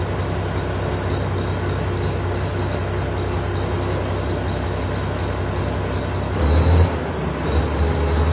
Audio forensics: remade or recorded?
recorded